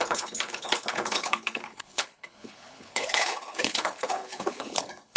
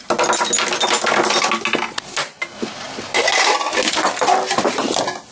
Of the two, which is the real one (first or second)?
second